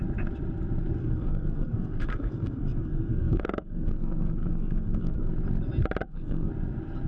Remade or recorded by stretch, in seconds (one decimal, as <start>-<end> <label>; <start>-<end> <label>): 0.0-1.0 recorded; 1.0-5.3 remade; 5.3-6.0 recorded; 6.0-6.5 remade; 6.5-7.1 recorded